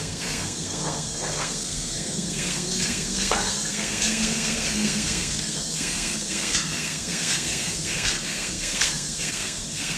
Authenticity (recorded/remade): remade